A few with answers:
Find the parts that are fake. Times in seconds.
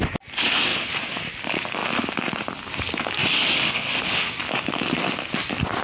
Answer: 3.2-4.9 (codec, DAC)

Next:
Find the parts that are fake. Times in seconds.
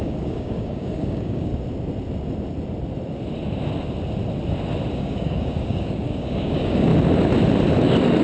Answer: 0.0-1.5 (codec, DAC); 5.0-6.9